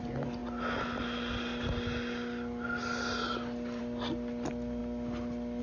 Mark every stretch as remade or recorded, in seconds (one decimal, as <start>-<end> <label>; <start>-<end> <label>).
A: 0.0-5.6 recorded